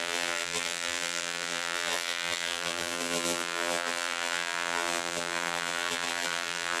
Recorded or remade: remade